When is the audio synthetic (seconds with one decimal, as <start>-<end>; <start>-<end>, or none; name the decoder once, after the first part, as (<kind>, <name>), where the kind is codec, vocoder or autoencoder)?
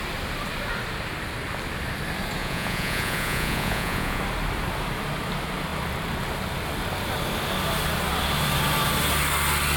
2.4-4.2 (vocoder, Vocos)